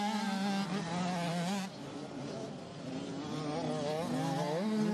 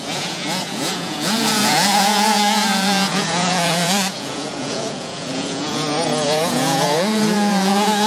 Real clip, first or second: first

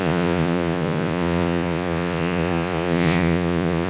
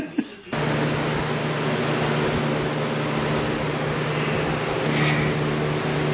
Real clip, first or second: second